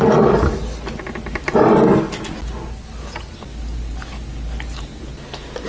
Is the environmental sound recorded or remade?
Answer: recorded